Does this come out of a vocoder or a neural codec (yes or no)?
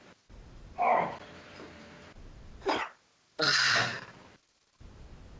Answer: yes